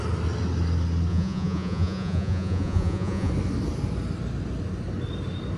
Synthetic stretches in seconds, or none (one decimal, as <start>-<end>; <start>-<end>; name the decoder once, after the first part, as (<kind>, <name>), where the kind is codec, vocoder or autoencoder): 1.1-3.3 (vocoder, Vocos)

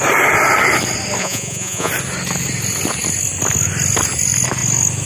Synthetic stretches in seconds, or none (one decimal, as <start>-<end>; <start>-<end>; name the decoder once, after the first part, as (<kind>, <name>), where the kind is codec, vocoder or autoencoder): 1.2-1.9 (vocoder, Vocos)